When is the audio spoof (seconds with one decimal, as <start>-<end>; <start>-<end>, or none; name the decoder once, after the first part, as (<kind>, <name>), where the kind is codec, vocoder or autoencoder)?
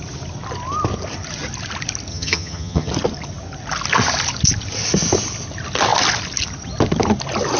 2.1-2.9 (vocoder, HiFi-GAN)